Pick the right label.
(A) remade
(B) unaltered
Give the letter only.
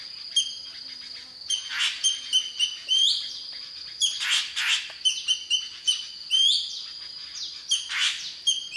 B